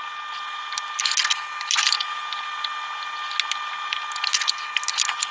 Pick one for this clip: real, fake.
real